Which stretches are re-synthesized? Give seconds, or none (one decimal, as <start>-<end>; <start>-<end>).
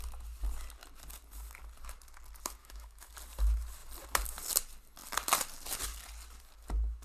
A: 2.6-3.1